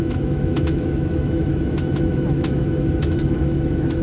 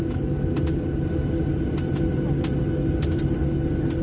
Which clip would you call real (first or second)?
second